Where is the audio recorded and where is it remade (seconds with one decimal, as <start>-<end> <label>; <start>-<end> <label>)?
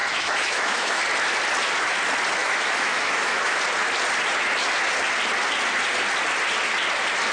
0.0-1.0 remade; 1.0-2.4 recorded; 2.4-3.6 remade; 3.6-7.3 recorded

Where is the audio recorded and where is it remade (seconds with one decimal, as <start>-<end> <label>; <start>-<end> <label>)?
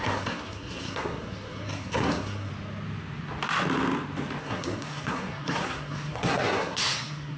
0.0-2.5 remade; 2.5-4.4 recorded; 4.4-7.4 remade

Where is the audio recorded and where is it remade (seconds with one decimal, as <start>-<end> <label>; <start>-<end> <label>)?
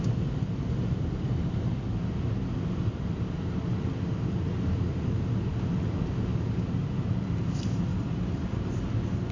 0.0-7.9 recorded; 7.9-8.8 remade; 8.8-9.3 recorded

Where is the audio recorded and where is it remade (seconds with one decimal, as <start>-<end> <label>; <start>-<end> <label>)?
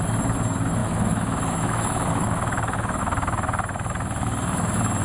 0.0-0.8 recorded; 0.8-3.0 remade; 3.0-5.0 recorded